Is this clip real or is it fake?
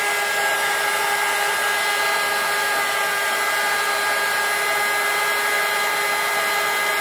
real